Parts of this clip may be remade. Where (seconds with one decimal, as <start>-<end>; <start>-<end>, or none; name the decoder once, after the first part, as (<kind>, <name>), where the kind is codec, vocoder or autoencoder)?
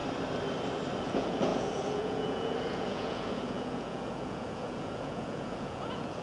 1.0-6.2 (vocoder, Vocos)